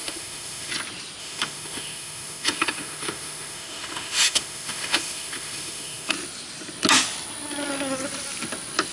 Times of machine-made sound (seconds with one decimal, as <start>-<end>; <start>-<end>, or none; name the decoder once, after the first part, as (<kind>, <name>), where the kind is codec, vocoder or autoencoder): 0.0-0.7 (autoencoder, DAC-VAE); 1.2-6.1